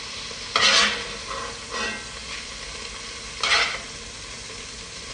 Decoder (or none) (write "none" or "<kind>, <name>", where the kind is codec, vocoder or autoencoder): none